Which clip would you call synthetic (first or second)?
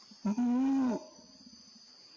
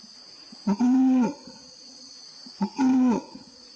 second